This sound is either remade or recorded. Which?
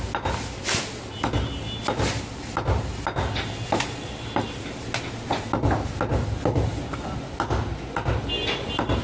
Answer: recorded